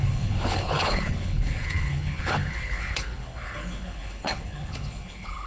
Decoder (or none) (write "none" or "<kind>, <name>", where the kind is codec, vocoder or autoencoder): codec, HILCodec